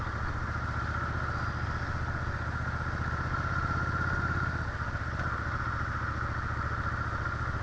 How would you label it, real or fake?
real